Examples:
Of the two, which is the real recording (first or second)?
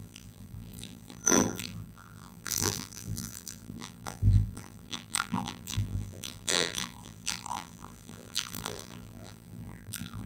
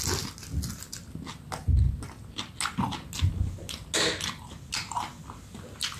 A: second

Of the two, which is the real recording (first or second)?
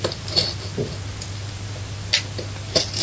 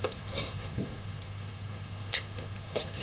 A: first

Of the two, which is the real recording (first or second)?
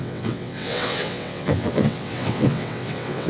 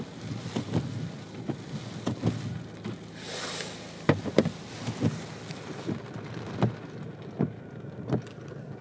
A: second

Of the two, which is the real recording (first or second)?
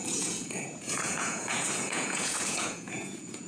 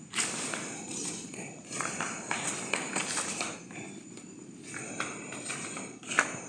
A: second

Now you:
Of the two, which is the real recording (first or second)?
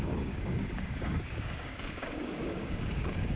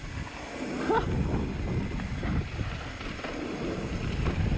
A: second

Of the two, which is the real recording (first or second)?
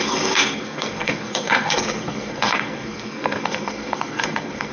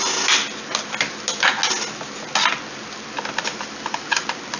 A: second